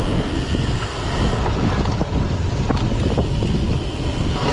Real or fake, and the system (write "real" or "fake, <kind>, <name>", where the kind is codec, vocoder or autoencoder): real